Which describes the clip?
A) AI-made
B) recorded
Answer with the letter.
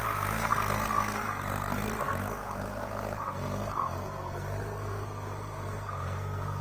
A